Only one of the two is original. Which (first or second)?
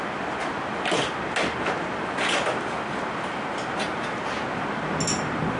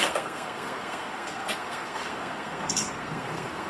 first